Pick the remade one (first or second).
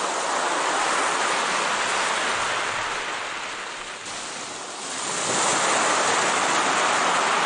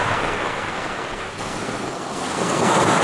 second